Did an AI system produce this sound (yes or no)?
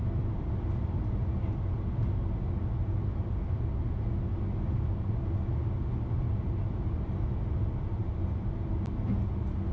no